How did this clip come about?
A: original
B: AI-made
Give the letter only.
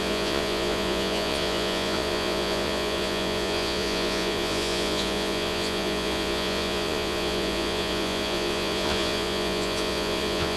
B